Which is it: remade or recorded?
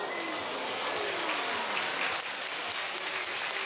recorded